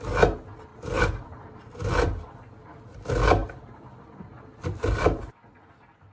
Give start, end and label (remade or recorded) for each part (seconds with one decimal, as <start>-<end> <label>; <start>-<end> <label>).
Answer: 0.0-0.7 recorded; 0.7-1.4 remade; 1.4-3.4 recorded; 3.4-5.3 remade; 5.3-6.1 recorded